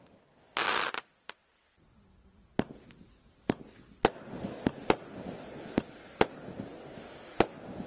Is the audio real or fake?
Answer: real